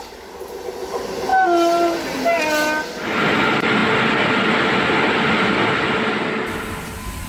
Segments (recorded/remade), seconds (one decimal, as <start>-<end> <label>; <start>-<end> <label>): 0.0-7.3 recorded